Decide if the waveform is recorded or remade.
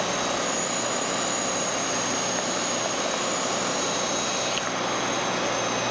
recorded